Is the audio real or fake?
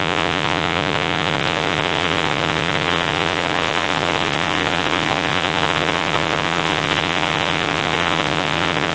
fake